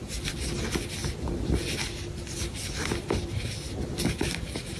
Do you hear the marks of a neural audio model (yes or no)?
no